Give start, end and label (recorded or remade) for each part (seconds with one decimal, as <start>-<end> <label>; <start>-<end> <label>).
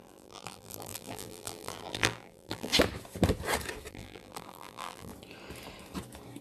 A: 0.0-2.7 remade; 2.7-3.9 recorded; 3.9-5.1 remade; 5.1-6.4 recorded